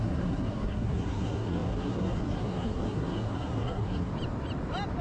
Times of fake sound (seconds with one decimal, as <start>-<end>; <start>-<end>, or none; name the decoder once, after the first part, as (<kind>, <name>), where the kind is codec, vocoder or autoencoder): 0.0-4.1 (codec, SNAC)

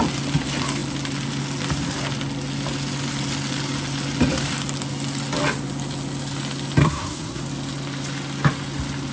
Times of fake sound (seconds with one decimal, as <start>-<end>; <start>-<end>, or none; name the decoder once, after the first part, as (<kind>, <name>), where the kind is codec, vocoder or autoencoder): 6.8-7.4 (codec, SNAC)